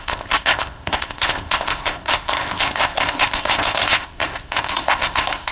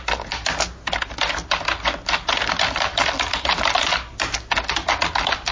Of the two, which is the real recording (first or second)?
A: second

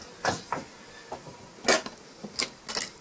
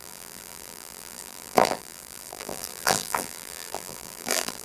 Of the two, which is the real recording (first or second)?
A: first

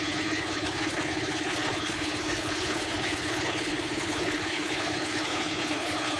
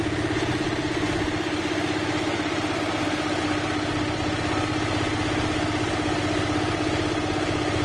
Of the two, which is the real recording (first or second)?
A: second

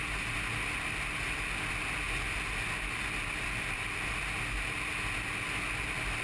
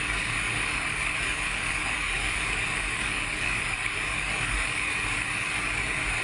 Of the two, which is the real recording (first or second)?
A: first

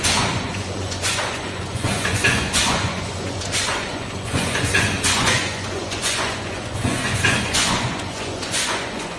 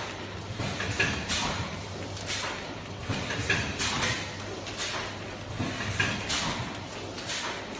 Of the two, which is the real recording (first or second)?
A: second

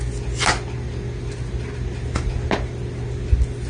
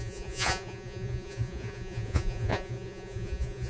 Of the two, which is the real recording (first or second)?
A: first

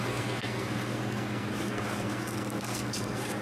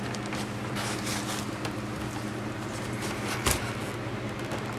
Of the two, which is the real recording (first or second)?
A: second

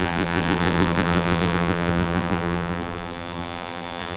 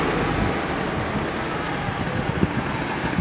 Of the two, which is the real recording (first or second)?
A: second